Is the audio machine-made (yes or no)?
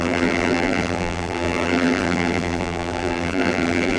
yes